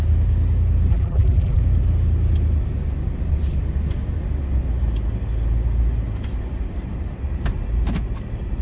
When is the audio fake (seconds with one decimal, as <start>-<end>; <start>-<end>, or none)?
0.9-1.6

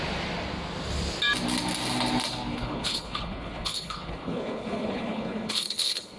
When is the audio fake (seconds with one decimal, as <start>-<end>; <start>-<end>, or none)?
2.5-6.2

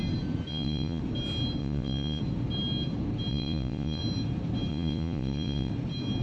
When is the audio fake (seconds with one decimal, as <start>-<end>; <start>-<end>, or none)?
0.5-1.0; 1.6-2.2; 3.3-4.0; 4.7-5.7